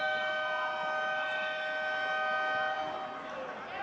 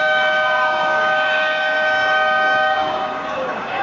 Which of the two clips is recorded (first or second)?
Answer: first